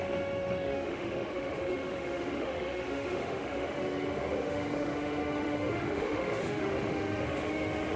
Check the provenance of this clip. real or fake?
fake